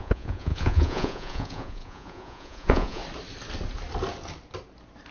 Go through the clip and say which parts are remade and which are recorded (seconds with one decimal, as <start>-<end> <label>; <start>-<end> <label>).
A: 0.0-3.0 remade; 3.0-5.1 recorded